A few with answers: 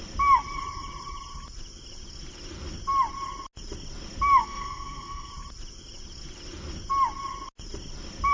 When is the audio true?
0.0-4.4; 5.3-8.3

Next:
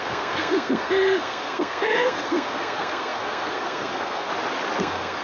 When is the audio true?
4.3-4.8

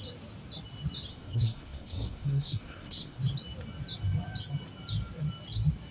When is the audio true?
0.0-1.1; 3.2-5.9